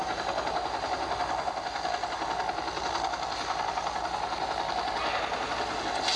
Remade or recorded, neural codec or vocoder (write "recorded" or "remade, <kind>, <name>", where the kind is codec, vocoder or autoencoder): recorded